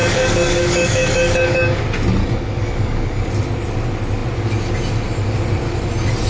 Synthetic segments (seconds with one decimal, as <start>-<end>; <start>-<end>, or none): 0.0-1.8; 2.2-3.3